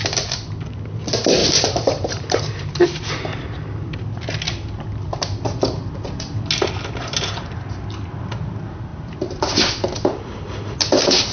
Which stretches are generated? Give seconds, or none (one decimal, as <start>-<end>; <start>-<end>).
1.4-3.1; 8.9-9.7